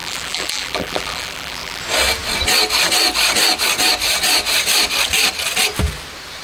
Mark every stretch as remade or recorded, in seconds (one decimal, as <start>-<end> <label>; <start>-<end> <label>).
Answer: 0.0-1.8 remade; 1.8-6.4 recorded